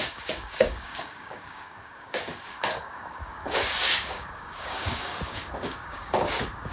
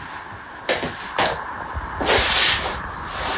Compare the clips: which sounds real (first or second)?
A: second